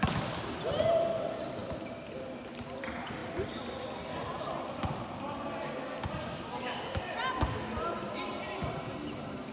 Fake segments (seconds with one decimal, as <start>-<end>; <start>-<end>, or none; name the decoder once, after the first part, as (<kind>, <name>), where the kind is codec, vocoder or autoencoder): none